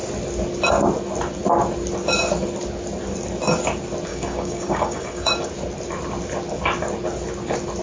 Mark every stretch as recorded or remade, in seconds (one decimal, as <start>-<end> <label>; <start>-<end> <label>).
0.0-4.1 recorded; 4.1-5.4 remade; 5.4-7.8 recorded